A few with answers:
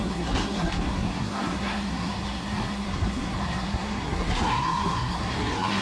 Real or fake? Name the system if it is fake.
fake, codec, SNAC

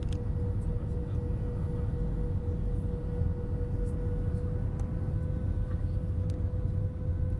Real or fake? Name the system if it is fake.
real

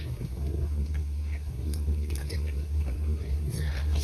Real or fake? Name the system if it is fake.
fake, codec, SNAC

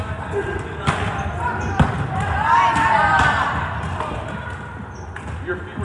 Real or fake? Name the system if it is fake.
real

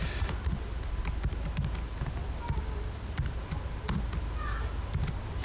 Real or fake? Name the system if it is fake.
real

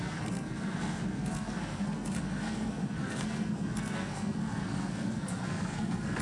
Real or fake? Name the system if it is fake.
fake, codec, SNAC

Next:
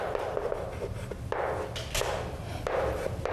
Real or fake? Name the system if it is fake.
real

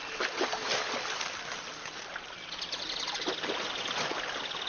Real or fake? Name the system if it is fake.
real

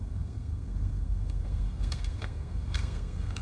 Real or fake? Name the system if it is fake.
fake, codec, SNAC